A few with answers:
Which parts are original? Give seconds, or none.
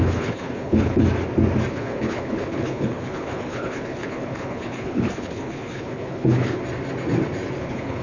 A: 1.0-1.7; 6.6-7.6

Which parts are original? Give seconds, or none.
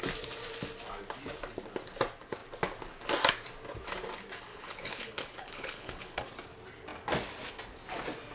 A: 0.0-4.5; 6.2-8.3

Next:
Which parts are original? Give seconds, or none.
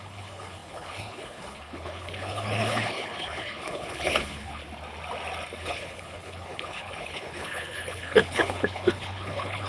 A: 4.6-5.6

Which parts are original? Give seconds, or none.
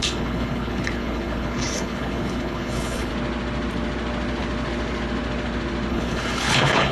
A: 3.1-5.9